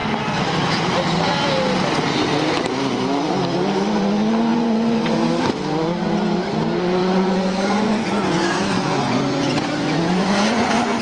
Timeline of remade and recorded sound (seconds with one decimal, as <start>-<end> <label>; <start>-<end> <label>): 0.0-4.5 recorded; 4.5-5.4 remade; 5.4-7.0 recorded; 7.0-11.0 remade